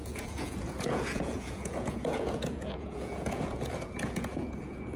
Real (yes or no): no